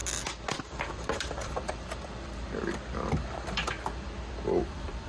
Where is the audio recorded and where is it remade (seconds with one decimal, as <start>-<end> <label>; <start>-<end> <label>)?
0.0-0.9 recorded; 0.9-5.1 remade